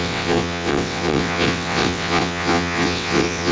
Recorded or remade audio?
remade